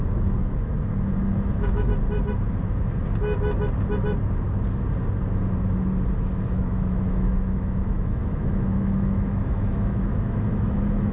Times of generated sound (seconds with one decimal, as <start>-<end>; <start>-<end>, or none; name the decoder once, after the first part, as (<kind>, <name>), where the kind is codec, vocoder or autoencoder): 0.0-1.9 (autoencoder, DAC-VAE); 6.5-11.1